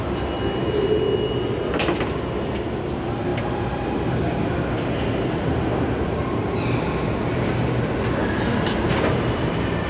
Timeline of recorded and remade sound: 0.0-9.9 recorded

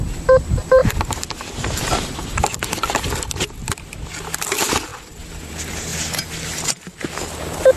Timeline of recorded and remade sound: 0.0-7.8 recorded

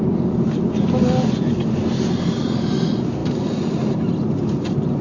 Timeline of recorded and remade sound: 0.0-3.2 recorded; 3.2-4.0 remade; 4.0-5.0 recorded

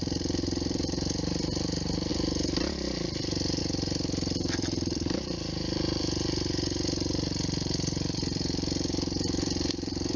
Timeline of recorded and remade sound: 0.0-2.1 remade; 2.1-3.6 recorded; 3.6-10.2 remade

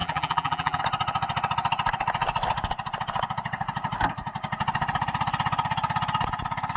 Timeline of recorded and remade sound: 0.0-0.8 remade; 0.8-6.8 recorded